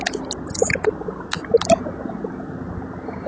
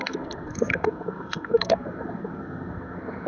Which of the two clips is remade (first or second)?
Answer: second